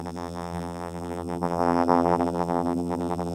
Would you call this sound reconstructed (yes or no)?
yes